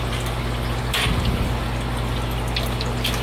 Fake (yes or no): no